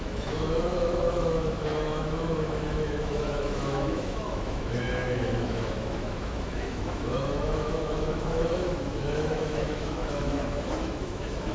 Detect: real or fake fake